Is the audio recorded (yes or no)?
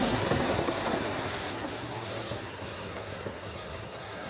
no